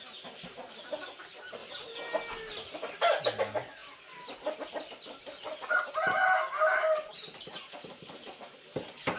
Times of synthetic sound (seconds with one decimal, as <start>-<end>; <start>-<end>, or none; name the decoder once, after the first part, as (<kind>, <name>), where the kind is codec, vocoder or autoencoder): none